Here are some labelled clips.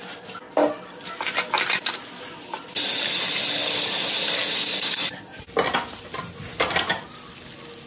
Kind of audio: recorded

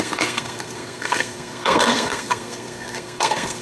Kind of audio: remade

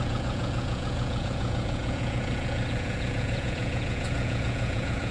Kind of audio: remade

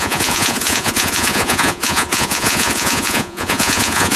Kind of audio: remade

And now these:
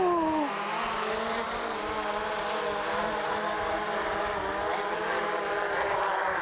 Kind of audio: recorded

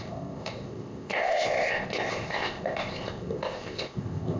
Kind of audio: remade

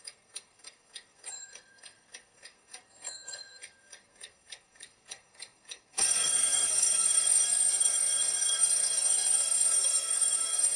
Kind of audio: remade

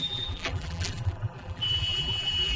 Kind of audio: remade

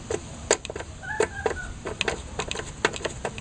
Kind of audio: recorded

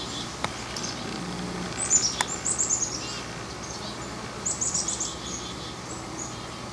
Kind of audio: recorded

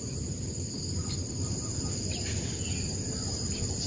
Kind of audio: recorded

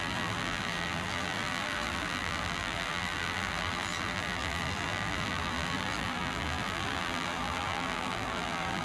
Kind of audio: remade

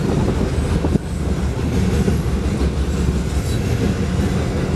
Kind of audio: recorded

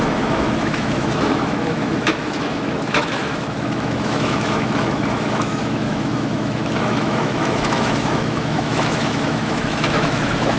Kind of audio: remade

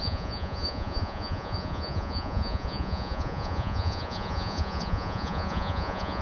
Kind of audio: remade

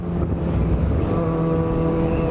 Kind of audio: remade